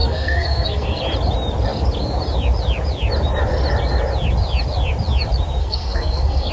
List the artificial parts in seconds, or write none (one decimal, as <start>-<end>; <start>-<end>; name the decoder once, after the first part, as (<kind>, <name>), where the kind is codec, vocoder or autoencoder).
0.0-1.0 (codec, SNAC); 5.6-6.5